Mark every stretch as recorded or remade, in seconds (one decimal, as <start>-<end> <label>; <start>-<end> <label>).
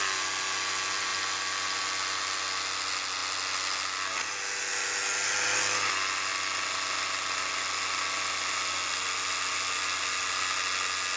0.0-11.2 recorded